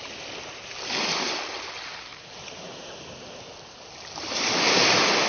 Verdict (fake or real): real